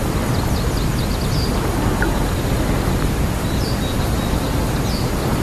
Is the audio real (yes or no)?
yes